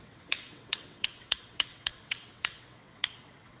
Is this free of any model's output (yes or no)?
no